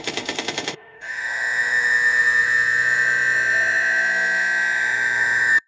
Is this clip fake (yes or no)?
yes